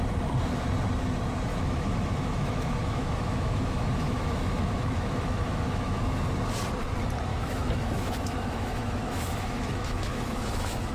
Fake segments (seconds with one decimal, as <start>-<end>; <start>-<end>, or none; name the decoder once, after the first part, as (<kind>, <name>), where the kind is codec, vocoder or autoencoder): 1.5-6.2 (autoencoder, DAC-VAE); 7.3-10.9